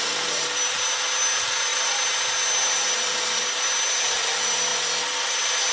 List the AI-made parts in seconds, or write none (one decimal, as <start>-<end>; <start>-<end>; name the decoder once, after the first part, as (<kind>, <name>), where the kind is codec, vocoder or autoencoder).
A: none